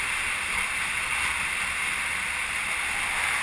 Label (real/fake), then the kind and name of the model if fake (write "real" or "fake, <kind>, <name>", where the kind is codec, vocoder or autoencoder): real